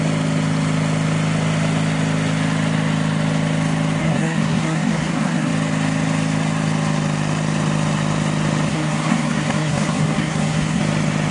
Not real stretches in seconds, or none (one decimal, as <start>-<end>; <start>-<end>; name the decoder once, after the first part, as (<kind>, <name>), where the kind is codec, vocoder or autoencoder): 4.0-5.5 (codec, SNAC); 8.7-10.8